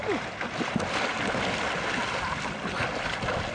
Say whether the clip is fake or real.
real